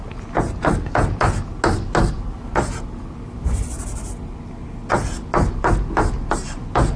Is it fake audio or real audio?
real